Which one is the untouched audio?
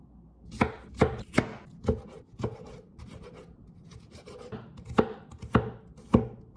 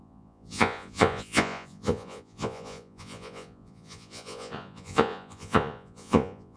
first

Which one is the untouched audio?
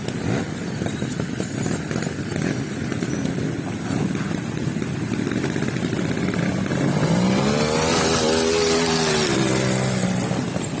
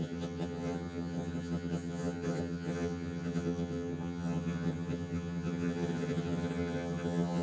first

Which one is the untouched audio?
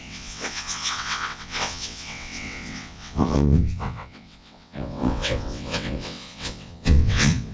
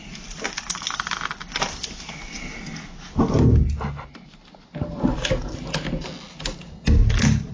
second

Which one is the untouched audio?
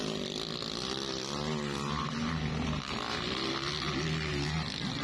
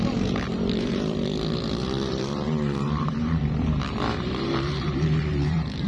first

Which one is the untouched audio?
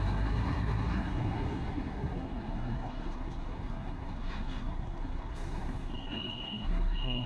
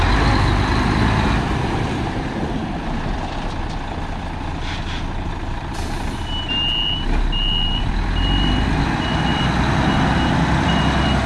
second